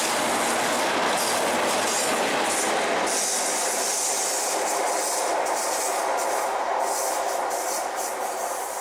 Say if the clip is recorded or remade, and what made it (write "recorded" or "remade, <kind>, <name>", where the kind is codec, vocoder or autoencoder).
recorded